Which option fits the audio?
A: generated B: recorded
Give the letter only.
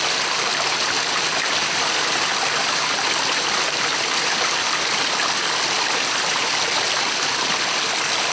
B